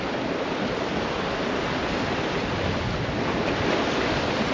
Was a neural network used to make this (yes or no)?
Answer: no